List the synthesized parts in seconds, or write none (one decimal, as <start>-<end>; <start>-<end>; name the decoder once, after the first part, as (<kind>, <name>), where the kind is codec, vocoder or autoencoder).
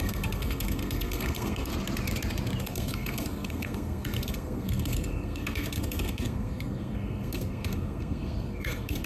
0.0-1.7 (codec, SNAC); 2.6-9.1